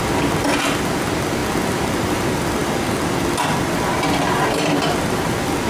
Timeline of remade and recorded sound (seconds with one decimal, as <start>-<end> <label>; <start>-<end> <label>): 0.0-5.7 recorded